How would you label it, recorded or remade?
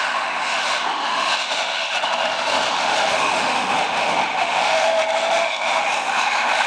remade